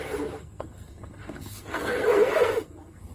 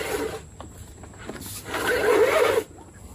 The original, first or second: second